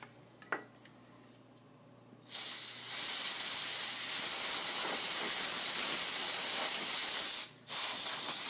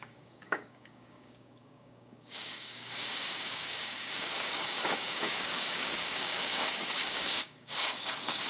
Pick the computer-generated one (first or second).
second